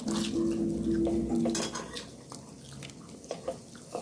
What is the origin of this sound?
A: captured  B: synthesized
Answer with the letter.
A